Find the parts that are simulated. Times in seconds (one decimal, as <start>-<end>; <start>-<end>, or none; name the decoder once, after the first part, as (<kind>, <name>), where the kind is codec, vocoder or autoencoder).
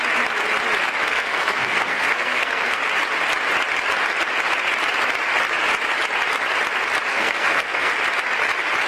1.1-2.8 (codec, SNAC); 7.1-7.9